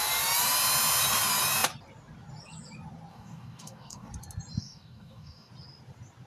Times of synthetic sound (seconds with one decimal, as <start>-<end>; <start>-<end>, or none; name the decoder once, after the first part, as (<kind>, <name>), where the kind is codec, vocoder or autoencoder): 3.1-4.1 (codec, DAC); 4.6-5.5